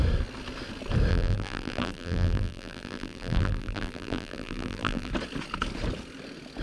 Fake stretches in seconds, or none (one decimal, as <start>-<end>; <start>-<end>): 1.1-5.1